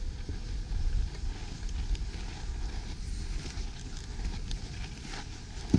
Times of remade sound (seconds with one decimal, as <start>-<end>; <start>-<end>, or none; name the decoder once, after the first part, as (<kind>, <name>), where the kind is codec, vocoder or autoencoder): none